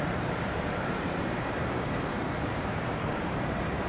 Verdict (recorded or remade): remade